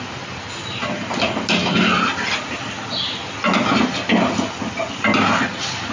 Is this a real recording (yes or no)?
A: yes